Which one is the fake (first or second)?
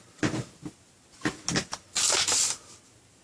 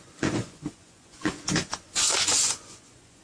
second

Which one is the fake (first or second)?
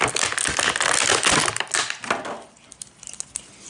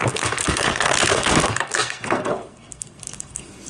second